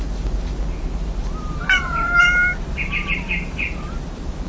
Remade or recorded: recorded